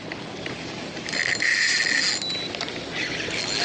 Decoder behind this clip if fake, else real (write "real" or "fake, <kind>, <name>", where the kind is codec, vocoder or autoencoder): real